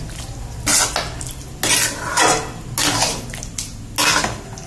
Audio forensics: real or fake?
real